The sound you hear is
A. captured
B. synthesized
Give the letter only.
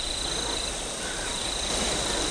A